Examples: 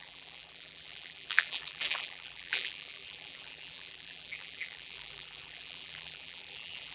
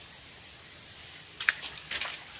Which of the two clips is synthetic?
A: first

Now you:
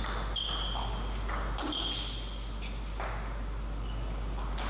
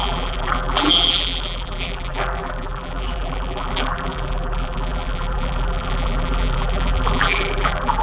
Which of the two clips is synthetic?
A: second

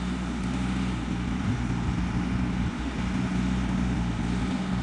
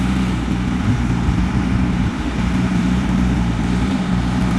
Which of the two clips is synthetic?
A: second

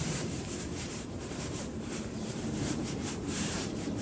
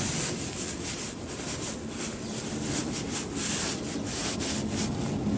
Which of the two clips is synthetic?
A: first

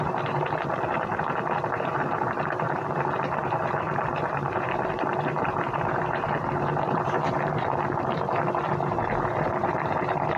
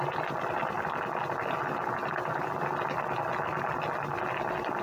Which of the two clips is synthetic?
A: first